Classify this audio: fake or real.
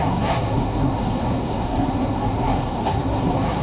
fake